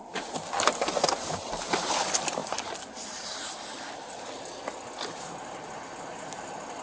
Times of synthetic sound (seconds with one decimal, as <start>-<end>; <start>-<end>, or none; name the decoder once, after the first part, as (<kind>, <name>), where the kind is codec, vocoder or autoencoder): none

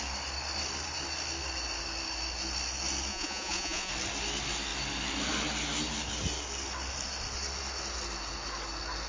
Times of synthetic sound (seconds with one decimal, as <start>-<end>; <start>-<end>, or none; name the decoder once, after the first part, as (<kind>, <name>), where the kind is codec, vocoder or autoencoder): 3.1-3.9 (vocoder, Vocos)

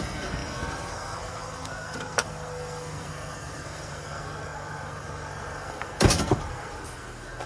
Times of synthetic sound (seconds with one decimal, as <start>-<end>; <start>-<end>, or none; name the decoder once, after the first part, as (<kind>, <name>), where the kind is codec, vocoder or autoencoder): 0.0-7.5 (codec, SNAC)

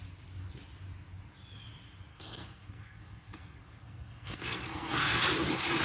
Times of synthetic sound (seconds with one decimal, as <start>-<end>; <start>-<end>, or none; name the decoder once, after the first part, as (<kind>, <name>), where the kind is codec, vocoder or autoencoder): 2.1-5.3 (codec, SNAC)